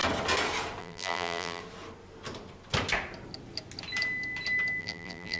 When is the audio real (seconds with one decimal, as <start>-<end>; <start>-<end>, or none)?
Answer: 0.0-0.8; 1.6-4.8